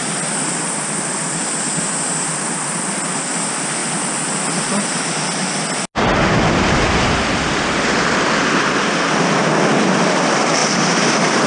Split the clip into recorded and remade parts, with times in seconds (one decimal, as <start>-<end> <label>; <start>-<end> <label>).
0.0-11.5 recorded